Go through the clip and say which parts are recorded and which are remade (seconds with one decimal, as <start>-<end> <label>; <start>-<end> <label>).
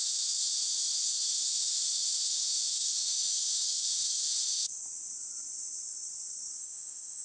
0.0-4.8 remade; 4.8-6.6 recorded; 6.6-7.2 remade